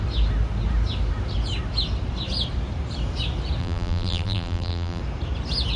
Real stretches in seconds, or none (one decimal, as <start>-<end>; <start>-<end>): 0.0-3.6; 5.0-5.8